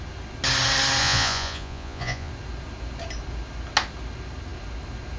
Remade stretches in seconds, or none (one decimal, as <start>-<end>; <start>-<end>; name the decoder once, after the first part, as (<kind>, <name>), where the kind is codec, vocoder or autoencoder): 1.0-2.3 (vocoder, Vocos)